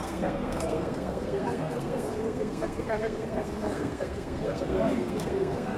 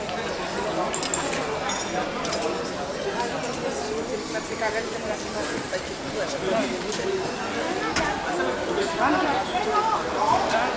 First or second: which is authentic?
second